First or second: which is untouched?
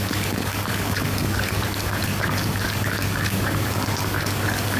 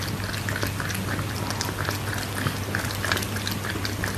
second